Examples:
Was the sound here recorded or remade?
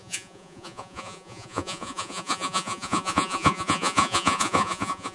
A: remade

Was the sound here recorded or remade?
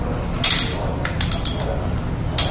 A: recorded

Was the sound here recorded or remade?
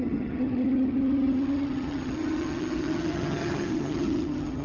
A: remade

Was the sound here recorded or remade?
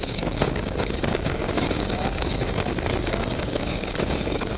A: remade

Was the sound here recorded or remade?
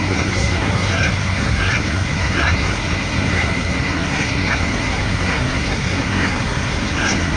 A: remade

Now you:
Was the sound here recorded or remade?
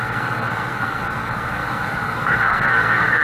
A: remade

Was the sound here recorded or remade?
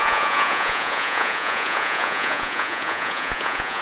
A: remade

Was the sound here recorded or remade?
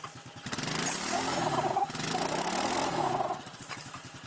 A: recorded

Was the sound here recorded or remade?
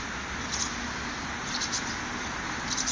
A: recorded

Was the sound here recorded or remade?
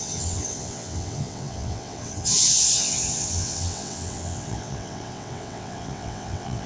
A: remade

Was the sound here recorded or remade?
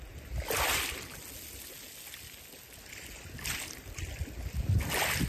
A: recorded